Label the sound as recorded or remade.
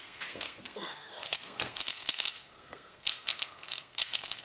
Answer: remade